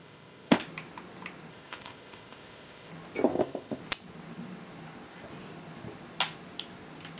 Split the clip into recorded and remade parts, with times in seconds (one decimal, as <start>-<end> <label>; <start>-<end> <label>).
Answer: 0.0-0.6 remade; 0.6-1.5 recorded; 1.5-2.9 remade; 2.9-3.3 recorded; 3.3-3.8 remade; 3.8-7.2 recorded